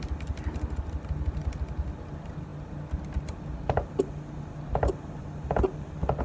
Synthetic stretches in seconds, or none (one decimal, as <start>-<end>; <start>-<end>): none